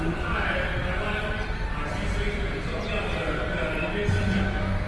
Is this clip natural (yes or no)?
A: yes